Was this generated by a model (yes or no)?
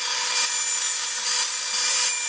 no